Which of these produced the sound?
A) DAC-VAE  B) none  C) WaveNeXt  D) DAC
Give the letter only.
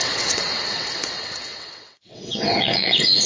C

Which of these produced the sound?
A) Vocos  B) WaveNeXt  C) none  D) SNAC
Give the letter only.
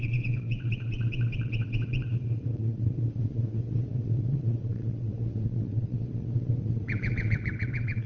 B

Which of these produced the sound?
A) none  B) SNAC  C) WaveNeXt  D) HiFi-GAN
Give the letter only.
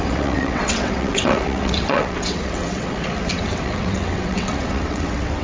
C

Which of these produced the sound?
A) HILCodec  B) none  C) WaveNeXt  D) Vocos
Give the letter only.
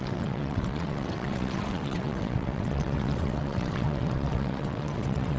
C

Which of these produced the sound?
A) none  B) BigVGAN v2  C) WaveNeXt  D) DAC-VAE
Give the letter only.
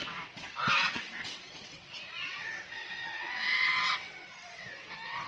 C